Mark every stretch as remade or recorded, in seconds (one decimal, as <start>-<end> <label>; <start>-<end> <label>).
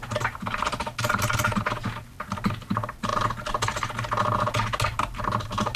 0.0-5.8 recorded